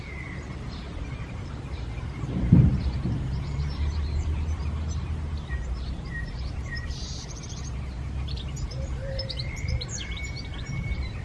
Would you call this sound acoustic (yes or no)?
no